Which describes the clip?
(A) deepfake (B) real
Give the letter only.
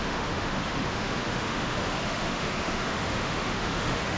A